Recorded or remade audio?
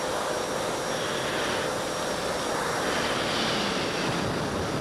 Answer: recorded